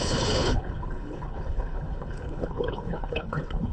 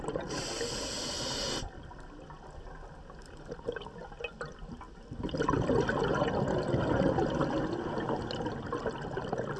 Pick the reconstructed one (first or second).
first